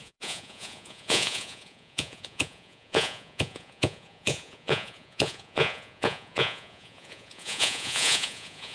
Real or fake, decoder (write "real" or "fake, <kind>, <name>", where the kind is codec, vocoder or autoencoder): fake, vocoder, Vocos